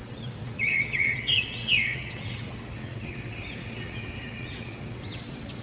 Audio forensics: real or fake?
fake